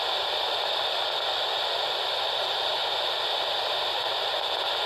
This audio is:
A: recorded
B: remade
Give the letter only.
A